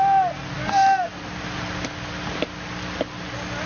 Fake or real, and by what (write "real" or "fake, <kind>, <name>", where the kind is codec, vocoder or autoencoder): real